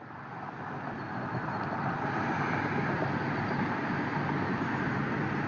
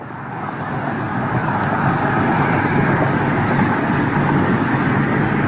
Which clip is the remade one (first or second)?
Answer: second